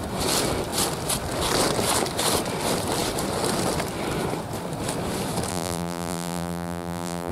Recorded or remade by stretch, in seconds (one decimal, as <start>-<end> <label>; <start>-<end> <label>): 0.0-5.5 recorded; 5.5-7.3 remade